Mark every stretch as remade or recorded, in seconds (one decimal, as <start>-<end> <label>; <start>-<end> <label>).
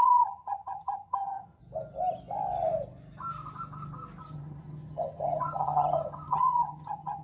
0.0-1.6 remade; 1.6-4.2 recorded; 4.2-7.2 remade